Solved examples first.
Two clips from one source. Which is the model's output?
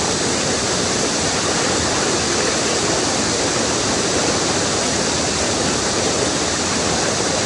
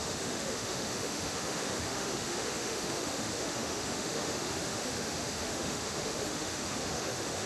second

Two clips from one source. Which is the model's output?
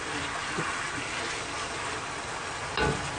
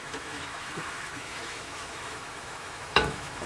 second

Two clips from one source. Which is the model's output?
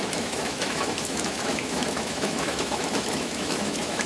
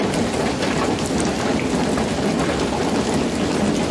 first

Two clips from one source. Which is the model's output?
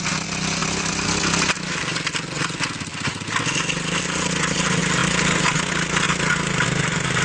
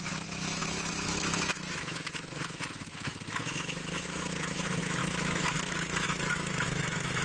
second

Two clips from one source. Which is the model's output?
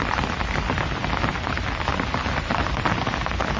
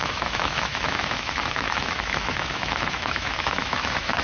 second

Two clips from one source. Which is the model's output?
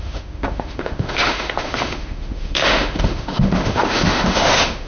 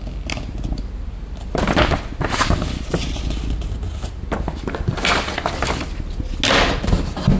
first